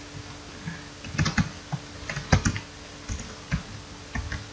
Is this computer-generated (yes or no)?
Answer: no